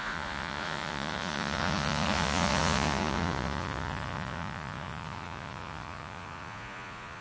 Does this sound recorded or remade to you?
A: remade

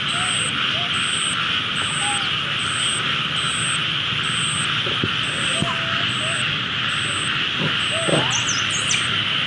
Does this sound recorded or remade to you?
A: recorded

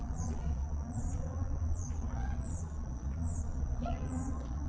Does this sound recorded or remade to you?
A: remade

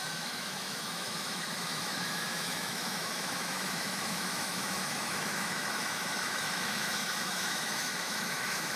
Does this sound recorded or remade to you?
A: remade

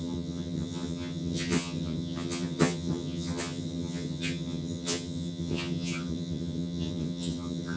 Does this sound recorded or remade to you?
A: remade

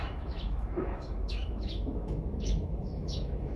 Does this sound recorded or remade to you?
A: remade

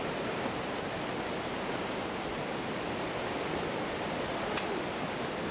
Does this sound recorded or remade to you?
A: recorded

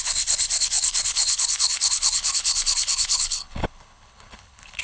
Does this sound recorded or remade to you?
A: remade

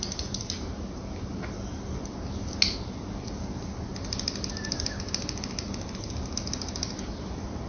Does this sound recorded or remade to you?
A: recorded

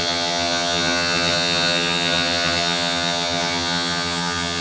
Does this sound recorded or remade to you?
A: remade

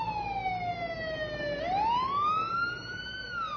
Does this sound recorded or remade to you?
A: recorded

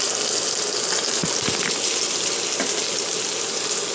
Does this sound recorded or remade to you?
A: recorded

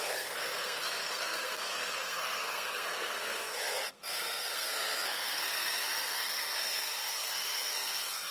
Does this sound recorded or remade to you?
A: remade